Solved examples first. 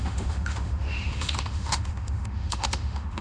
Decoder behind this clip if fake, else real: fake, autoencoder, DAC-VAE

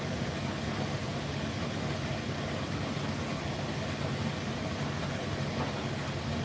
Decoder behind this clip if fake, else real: real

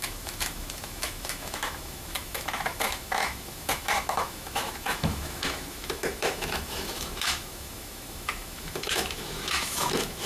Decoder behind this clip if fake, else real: fake, autoencoder, DAC-VAE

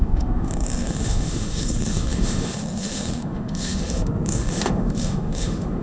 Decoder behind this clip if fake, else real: fake, autoencoder, DAC-VAE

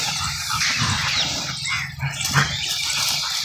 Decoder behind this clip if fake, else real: real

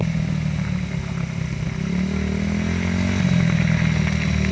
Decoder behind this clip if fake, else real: real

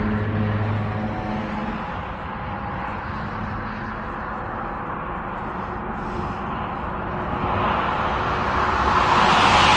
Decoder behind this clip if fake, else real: real